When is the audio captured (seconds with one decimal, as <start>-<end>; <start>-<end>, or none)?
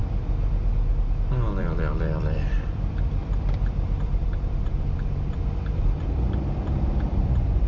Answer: 0.0-1.6